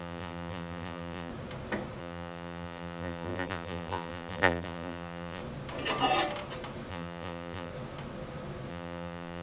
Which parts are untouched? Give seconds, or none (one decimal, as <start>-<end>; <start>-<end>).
1.3-2.0; 5.4-6.9; 7.7-8.7